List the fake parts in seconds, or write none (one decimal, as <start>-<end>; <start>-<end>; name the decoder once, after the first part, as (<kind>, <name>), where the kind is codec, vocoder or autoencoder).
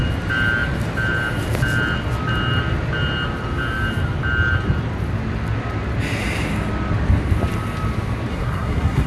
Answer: 8.3-9.1 (codec, SNAC)